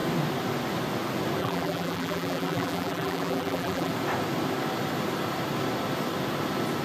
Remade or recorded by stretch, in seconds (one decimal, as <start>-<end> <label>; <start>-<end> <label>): 0.0-1.4 recorded; 1.4-3.9 remade; 3.9-6.8 recorded